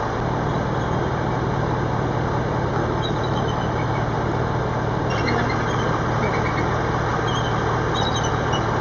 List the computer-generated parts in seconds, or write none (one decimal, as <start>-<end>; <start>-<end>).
2.8-3.9